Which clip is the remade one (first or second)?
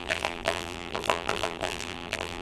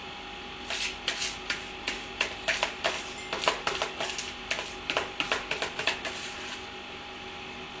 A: first